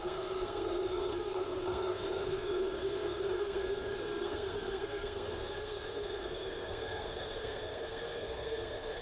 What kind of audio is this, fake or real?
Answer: fake